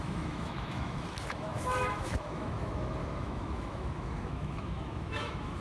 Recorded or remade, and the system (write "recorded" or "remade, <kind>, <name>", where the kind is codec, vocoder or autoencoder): remade, autoencoder, DAC-VAE